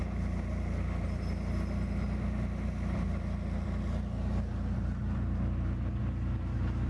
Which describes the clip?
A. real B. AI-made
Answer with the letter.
A